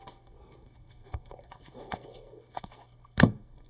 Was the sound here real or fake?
fake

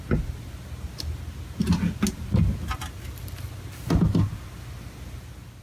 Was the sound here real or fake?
real